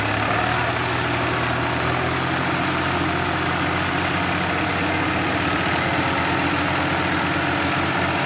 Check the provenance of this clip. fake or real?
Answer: real